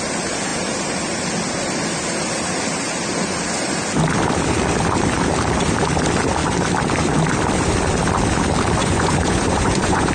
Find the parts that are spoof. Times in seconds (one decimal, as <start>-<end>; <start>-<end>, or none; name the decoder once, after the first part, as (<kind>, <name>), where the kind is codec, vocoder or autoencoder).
8.8-10.1 (vocoder, Vocos)